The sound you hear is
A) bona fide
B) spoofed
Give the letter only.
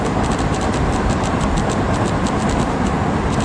A